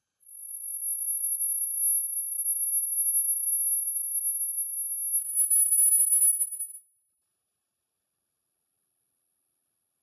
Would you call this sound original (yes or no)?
no